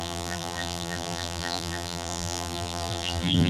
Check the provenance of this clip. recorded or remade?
remade